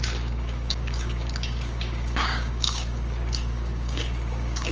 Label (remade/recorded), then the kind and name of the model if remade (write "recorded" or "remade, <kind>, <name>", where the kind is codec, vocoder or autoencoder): remade, codec, DAC